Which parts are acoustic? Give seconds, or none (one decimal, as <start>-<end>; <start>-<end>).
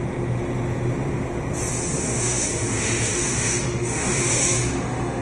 0.0-2.0